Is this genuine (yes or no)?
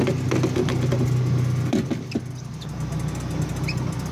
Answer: yes